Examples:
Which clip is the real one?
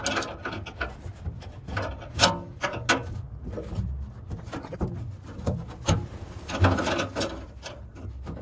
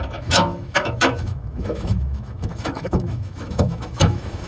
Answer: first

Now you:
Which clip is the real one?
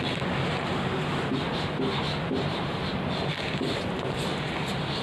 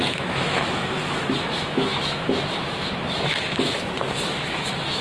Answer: first